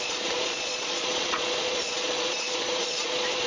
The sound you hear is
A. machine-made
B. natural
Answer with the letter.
A